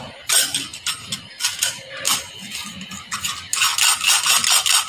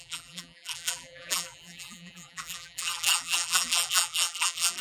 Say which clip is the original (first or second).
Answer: first